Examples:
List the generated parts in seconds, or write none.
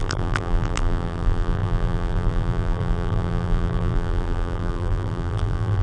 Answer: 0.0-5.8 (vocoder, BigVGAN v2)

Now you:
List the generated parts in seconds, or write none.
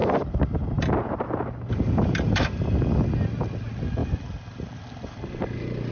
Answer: 0.0-2.6 (vocoder, BigVGAN v2)